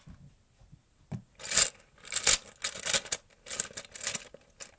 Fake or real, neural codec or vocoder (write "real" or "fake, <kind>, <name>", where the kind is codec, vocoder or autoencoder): real